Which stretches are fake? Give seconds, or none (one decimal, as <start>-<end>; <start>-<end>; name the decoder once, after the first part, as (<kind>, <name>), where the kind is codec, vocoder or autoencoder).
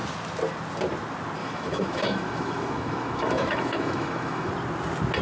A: 1.4-4.5 (autoencoder, DAC-VAE)